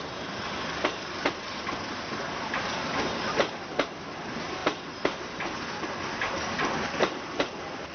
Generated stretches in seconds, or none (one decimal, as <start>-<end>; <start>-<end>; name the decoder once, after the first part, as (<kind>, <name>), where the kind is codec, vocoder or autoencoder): none